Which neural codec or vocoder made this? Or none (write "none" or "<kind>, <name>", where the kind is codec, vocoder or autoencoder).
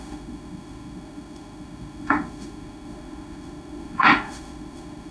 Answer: autoencoder, DAC-VAE